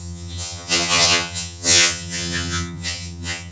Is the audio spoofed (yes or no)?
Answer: yes